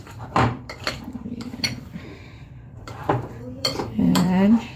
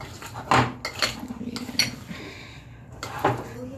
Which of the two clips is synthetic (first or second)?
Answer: first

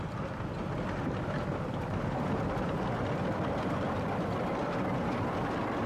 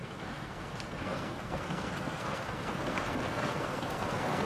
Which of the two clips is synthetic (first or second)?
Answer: second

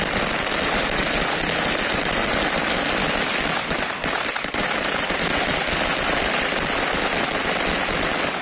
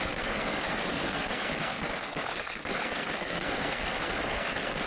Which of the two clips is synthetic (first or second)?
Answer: second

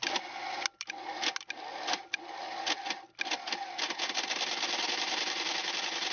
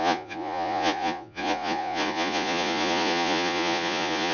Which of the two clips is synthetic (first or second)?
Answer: second